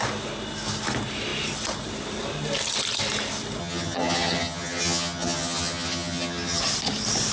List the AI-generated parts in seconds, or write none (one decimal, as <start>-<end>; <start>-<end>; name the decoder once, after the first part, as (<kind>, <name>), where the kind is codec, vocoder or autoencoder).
3.6-6.6 (vocoder, HiFi-GAN)

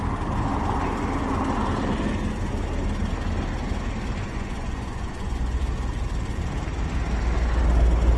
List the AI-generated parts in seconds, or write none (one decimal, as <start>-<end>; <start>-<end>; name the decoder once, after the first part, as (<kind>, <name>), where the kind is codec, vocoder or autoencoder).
4.2-5.6 (vocoder, Vocos)

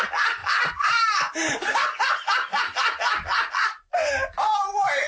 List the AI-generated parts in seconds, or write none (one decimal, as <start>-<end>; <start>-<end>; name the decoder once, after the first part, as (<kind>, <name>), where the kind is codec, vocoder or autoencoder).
none